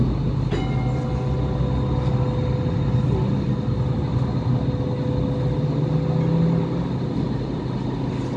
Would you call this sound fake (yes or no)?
no